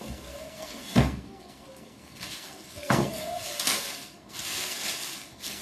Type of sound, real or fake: fake